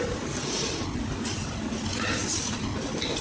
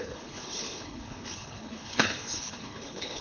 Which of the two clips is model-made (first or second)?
second